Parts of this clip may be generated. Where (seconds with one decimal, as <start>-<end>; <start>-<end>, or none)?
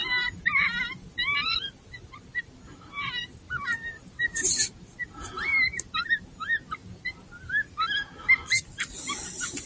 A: 0.0-2.4; 3.2-4.3; 6.8-7.5